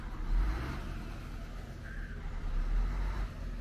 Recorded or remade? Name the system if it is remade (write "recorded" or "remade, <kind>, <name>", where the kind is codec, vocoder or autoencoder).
recorded